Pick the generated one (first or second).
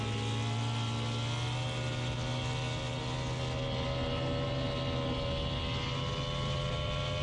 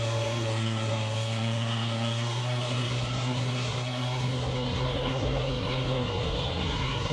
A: second